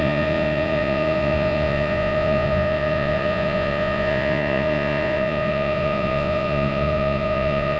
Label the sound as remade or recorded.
remade